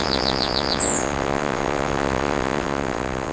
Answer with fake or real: fake